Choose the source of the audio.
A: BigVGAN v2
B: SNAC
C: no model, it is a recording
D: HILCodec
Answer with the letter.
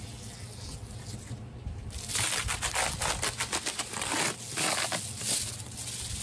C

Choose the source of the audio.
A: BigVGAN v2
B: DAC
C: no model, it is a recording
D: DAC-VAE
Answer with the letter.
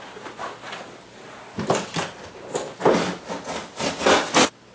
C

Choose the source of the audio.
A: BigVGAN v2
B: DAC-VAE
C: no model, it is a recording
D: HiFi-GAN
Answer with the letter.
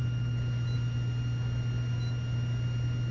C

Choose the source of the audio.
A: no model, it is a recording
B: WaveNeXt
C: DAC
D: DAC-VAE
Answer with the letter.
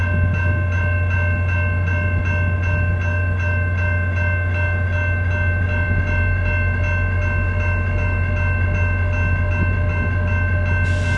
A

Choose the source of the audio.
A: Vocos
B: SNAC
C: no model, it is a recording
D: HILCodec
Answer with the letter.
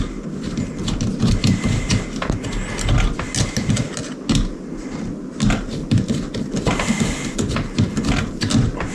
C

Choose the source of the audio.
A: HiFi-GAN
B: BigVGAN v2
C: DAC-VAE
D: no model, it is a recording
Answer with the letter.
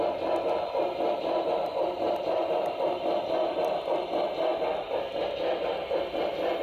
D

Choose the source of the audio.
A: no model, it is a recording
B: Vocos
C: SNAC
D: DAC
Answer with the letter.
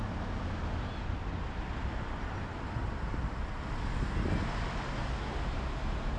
A